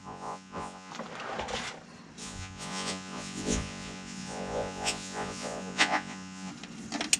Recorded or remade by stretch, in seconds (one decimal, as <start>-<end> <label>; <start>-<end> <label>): 0.0-0.9 remade; 0.9-2.2 recorded; 2.2-6.5 remade; 6.5-7.2 recorded